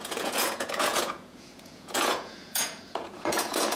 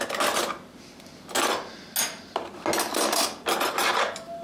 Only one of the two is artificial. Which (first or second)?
first